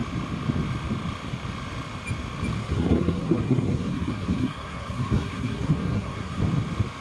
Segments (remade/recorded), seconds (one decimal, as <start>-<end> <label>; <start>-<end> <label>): 0.0-2.6 recorded; 2.6-6.4 remade; 6.4-7.0 recorded